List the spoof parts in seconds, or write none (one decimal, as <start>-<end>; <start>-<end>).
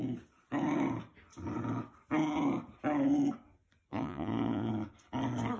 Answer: 3.9-4.7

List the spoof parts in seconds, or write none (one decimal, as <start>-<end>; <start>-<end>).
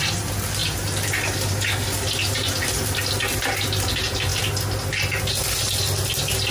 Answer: none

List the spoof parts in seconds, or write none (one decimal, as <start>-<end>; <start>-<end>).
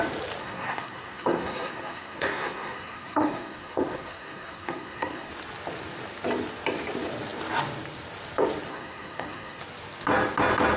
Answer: 0.4-5.3; 8.7-9.6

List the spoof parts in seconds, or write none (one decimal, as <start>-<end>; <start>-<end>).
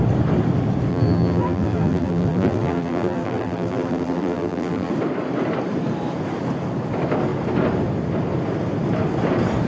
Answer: 0.9-4.9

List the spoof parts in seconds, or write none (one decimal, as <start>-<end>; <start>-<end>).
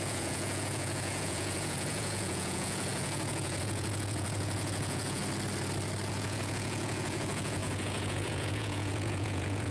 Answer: 0.0-5.2; 6.1-9.7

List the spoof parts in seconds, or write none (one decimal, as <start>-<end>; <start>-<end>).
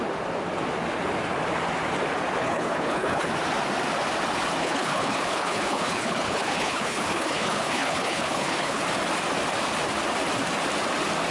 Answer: 2.4-3.3; 4.6-8.8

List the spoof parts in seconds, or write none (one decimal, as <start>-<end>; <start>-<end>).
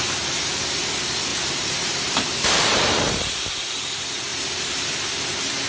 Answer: 1.3-3.3; 4.3-4.9